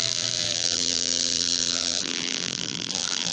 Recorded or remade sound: remade